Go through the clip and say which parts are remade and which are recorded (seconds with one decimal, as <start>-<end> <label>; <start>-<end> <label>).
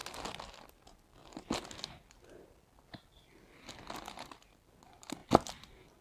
0.0-6.0 recorded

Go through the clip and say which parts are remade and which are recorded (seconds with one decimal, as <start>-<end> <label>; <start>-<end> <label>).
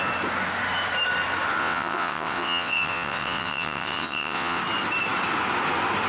0.0-1.6 recorded; 1.6-4.6 remade; 4.6-6.1 recorded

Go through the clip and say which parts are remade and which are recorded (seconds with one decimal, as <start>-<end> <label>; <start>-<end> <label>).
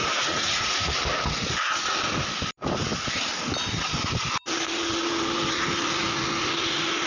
0.0-0.9 remade; 0.9-7.1 recorded